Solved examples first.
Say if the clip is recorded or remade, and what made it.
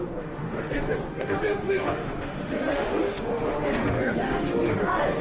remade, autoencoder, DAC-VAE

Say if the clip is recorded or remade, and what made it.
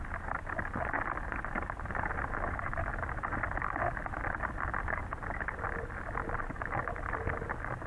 recorded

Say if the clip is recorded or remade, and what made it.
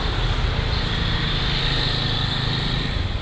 recorded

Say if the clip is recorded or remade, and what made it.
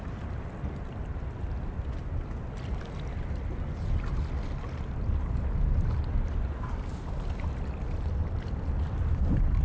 recorded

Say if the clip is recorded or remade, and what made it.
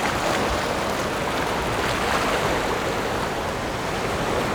recorded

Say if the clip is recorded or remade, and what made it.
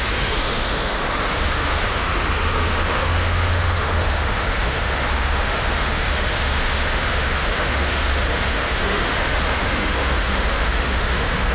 remade, autoencoder, DAC-VAE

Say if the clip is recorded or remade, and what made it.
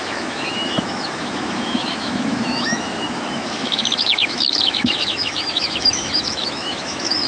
remade, autoencoder, DAC-VAE